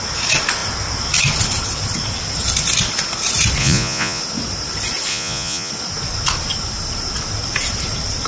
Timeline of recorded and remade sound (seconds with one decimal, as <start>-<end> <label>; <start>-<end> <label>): 0.0-3.6 recorded; 3.6-4.2 remade; 4.2-5.1 recorded; 5.1-5.7 remade; 5.7-8.3 recorded